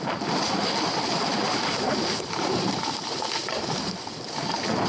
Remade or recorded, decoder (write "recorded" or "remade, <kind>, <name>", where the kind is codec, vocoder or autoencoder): recorded